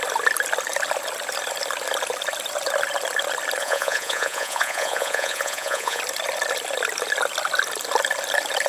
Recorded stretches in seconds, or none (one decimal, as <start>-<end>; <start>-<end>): 0.0-3.6; 6.0-8.7